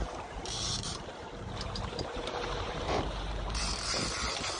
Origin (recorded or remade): remade